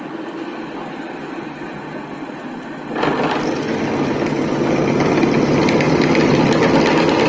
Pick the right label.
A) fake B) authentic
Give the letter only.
B